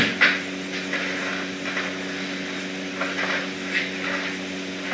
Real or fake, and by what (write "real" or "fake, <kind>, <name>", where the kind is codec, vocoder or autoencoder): real